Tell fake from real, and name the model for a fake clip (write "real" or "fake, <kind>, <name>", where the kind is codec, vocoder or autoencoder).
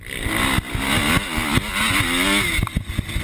real